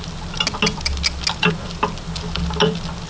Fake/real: real